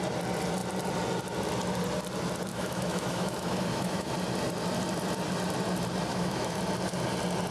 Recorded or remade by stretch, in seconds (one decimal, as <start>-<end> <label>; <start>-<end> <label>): 0.0-2.5 recorded; 2.5-4.1 remade; 4.1-6.1 recorded; 6.1-6.6 remade; 6.6-7.5 recorded